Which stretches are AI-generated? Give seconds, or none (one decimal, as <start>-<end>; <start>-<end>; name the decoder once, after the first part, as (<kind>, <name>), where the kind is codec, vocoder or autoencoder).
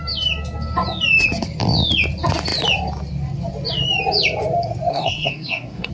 4.9-5.9 (codec, SNAC)